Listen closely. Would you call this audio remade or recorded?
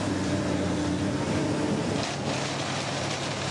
remade